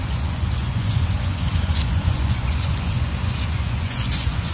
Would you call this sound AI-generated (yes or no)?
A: yes